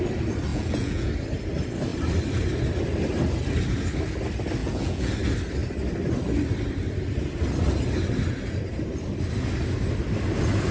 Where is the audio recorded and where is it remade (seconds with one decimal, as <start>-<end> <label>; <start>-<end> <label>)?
0.0-0.5 recorded; 0.5-1.1 remade; 1.1-4.6 recorded; 4.6-5.1 remade; 5.1-10.7 recorded